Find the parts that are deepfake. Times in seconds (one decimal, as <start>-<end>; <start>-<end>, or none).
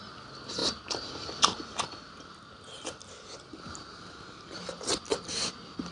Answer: none